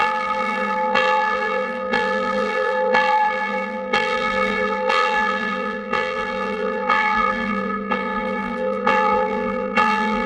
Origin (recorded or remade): remade